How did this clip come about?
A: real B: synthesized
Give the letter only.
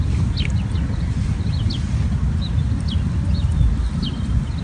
A